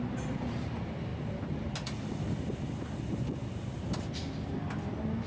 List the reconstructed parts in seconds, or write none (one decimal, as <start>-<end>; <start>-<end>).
none